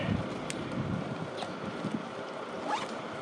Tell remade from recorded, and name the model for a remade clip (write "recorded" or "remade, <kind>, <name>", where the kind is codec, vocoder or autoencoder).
recorded